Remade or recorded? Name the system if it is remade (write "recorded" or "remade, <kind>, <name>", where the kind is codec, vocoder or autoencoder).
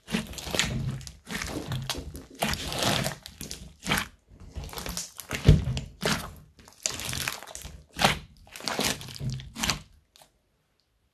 recorded